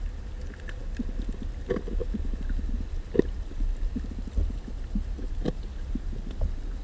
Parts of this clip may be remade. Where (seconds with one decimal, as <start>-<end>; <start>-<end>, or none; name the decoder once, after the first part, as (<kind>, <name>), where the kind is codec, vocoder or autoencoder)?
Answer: none